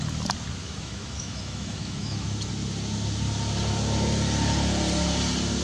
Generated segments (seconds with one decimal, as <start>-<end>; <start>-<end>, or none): 0.6-2.5